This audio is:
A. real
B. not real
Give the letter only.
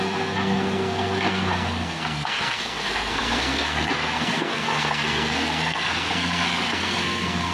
B